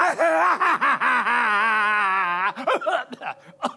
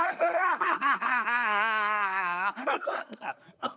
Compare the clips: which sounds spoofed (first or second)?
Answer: second